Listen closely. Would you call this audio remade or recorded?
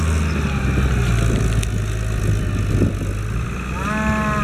recorded